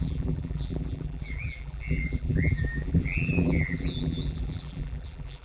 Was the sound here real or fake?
fake